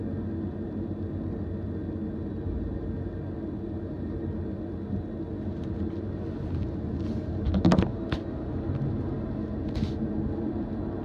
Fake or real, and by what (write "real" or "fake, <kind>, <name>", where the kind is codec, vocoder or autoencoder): real